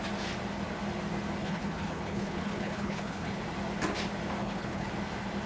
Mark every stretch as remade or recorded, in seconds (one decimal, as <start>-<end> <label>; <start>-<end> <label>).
0.0-1.4 recorded; 1.4-3.4 remade; 3.4-4.4 recorded; 4.4-4.9 remade; 4.9-5.5 recorded

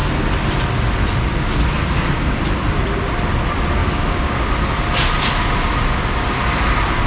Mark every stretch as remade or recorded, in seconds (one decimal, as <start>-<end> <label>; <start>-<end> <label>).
0.0-3.8 recorded; 3.8-4.4 remade; 4.4-7.1 recorded

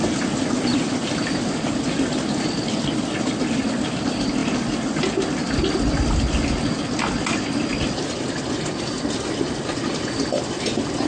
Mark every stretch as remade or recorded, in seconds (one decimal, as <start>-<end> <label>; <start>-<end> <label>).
0.0-11.1 recorded

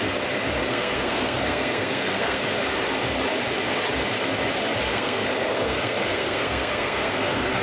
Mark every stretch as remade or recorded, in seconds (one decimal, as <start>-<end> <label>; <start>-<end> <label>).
0.0-0.6 recorded; 0.6-2.5 remade; 2.5-4.9 recorded; 4.9-7.6 remade

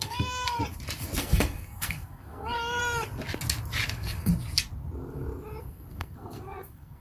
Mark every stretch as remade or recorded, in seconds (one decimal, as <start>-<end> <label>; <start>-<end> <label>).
0.0-0.6 remade; 0.6-1.2 recorded; 1.2-2.8 remade; 2.8-3.9 recorded; 3.9-4.3 remade; 4.3-5.6 recorded; 5.6-7.0 remade

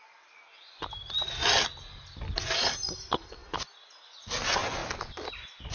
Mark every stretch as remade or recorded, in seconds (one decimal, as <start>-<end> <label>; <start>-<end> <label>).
0.0-5.7 recorded

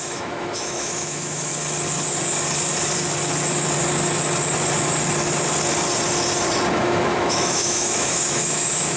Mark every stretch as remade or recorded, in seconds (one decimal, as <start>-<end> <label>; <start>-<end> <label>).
0.0-1.5 remade; 1.5-6.7 recorded; 6.7-9.0 remade

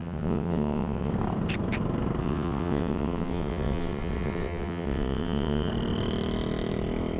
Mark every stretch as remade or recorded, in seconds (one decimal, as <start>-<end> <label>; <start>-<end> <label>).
0.0-1.1 remade; 1.1-2.2 recorded; 2.2-5.7 remade; 5.7-7.2 recorded